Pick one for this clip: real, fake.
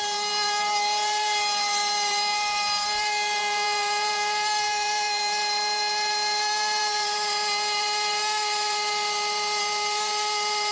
fake